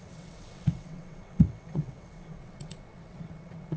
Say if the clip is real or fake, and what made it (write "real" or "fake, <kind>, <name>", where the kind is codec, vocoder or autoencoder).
fake, vocoder, WaveNeXt